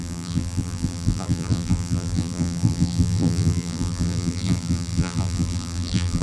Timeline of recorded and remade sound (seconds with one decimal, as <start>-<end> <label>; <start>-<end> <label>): 0.0-6.2 remade